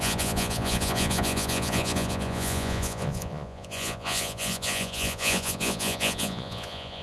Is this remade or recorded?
remade